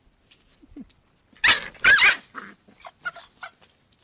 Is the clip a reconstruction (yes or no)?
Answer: no